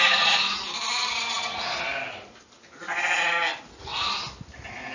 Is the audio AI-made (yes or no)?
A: no